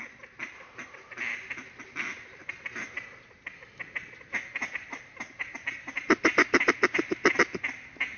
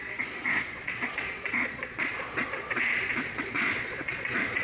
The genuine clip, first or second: first